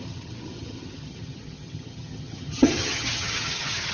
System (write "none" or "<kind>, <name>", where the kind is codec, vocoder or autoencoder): vocoder, HiFi-GAN